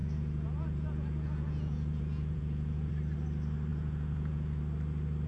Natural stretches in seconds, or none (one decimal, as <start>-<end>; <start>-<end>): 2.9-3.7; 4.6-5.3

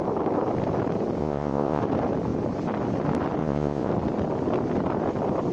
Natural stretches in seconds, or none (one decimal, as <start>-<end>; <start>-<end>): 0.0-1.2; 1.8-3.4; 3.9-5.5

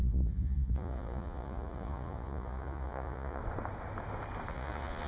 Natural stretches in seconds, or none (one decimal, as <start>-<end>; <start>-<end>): 3.4-4.5

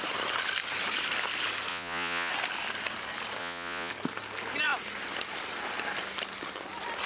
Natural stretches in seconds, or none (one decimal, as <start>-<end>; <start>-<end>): 0.0-1.7; 2.3-3.4; 3.9-7.1